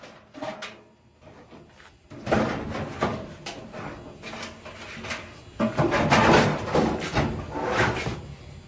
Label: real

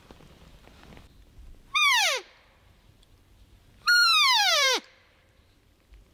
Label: fake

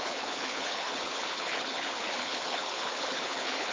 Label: fake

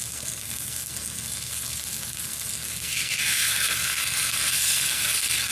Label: fake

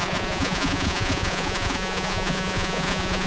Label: fake